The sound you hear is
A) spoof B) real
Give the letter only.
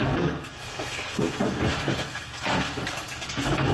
A